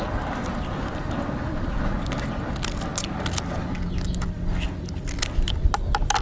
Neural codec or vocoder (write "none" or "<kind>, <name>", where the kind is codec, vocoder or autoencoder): none